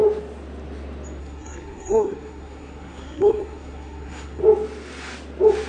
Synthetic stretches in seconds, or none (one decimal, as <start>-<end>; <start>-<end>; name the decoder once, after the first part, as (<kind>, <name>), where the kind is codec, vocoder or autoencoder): 1.2-4.4 (codec, SNAC)